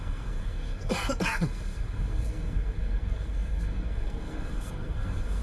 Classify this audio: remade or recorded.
remade